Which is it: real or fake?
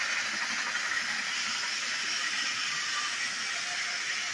real